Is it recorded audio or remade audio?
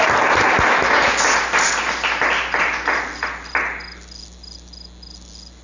recorded